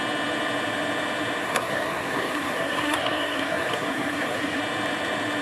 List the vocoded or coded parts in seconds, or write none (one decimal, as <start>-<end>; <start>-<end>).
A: 1.4-4.6